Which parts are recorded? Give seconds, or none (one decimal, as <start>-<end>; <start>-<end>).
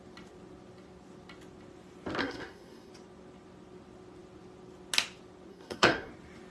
0.0-2.2; 2.9-5.5; 6.1-6.5